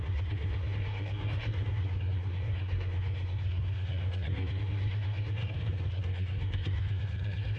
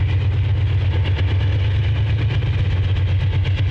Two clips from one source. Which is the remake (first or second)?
first